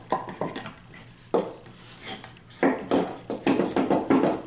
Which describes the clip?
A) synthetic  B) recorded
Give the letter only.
B